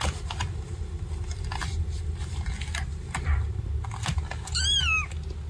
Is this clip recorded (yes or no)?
yes